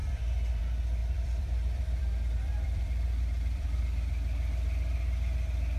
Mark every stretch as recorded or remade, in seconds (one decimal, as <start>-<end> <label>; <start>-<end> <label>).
0.0-0.6 remade; 0.6-1.0 recorded; 1.0-3.8 remade; 3.8-5.8 recorded